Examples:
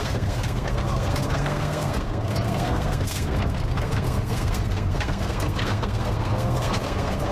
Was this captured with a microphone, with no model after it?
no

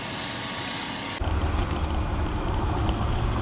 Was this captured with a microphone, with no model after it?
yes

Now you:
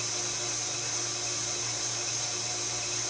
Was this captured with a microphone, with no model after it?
yes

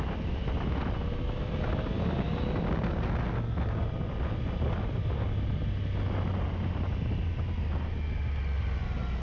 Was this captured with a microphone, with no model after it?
yes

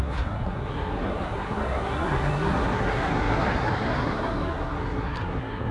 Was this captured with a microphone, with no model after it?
no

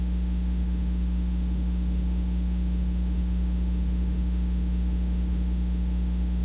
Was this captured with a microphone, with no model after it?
no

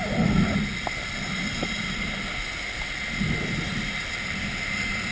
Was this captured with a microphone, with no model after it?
yes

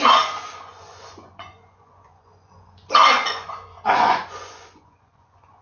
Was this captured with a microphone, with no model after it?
no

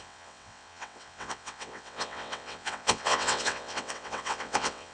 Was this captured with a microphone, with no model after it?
no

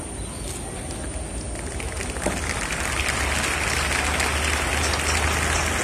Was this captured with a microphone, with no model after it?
yes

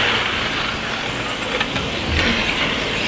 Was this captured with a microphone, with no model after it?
yes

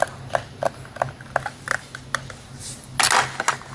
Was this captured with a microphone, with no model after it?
yes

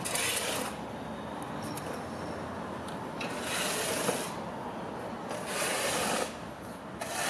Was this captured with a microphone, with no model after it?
yes